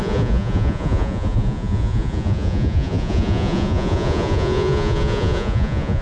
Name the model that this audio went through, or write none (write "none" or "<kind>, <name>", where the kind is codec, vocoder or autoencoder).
vocoder, Vocos